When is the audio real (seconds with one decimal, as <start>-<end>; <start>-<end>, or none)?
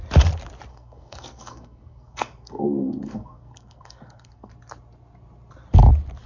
0.0-0.7; 4.5-6.3